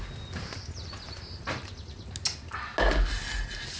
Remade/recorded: recorded